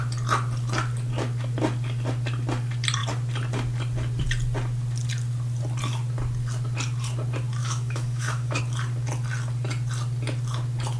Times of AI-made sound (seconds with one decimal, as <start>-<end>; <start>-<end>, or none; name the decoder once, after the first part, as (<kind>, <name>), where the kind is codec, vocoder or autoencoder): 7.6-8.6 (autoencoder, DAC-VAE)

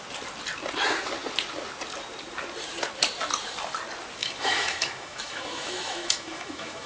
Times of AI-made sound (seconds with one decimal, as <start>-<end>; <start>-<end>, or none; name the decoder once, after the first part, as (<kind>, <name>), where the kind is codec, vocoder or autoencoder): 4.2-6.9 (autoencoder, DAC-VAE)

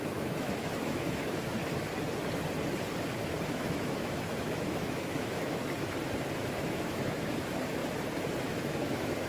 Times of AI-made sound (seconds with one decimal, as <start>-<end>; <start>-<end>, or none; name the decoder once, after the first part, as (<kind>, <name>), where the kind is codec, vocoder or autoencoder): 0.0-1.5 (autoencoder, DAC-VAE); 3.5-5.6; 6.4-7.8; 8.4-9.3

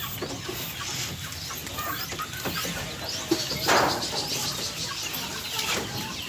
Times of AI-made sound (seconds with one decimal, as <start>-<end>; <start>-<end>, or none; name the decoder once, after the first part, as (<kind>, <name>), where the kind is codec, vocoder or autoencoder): none

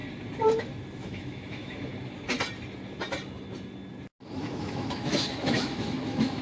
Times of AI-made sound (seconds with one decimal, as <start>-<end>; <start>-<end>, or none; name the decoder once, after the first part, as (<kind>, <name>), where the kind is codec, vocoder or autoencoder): 1.0-1.9 (autoencoder, DAC-VAE); 4.3-6.4

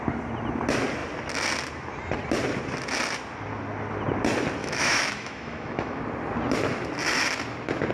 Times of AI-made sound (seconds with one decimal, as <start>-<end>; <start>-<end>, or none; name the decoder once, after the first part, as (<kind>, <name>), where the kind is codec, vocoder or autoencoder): 4.6-6.0 (autoencoder, DAC-VAE)

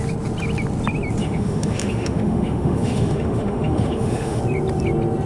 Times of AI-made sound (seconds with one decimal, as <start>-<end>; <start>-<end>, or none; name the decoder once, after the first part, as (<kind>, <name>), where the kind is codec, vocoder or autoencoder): 1.2-4.4 (autoencoder, DAC-VAE)